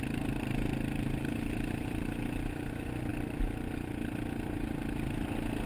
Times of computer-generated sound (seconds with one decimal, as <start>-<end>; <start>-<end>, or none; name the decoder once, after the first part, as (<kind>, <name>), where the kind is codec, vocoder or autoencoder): none